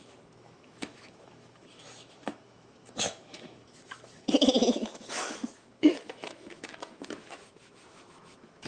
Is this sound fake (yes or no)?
yes